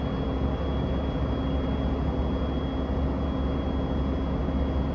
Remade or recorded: recorded